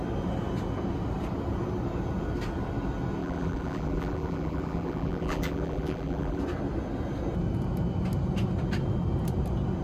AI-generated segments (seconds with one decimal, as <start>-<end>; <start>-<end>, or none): 3.2-6.4